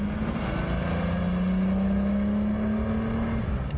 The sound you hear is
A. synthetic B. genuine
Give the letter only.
B